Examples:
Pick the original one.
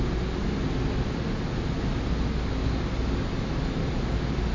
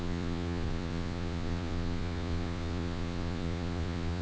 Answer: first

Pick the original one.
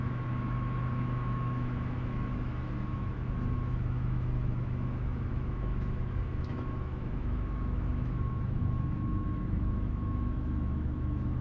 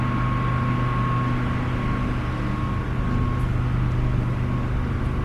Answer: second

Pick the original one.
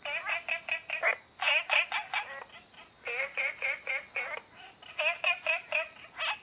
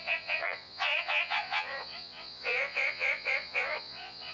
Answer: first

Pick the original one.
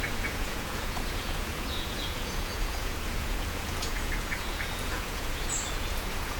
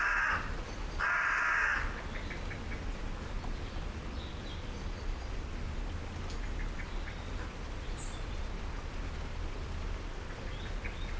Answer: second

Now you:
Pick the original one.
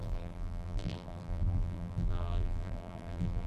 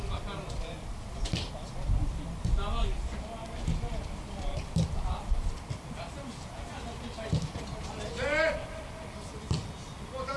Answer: second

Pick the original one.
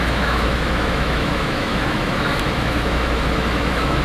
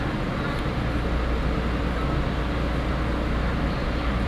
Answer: second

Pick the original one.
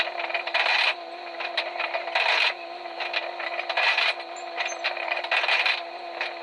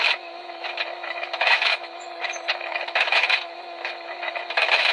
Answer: first